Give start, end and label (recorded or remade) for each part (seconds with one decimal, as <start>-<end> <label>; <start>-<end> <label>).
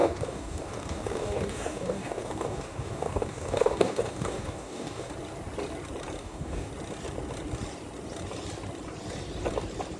0.0-5.1 remade; 5.1-6.2 recorded; 6.2-6.7 remade; 6.7-10.0 recorded